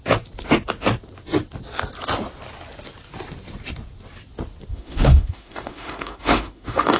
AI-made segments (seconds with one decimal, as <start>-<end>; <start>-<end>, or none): 4.7-7.0